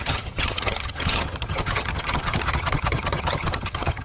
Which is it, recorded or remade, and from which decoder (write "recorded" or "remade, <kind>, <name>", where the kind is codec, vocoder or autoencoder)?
remade, vocoder, HiFi-GAN